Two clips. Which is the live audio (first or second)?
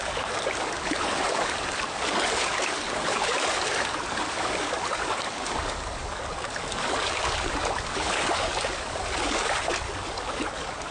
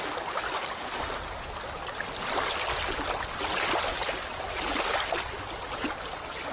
second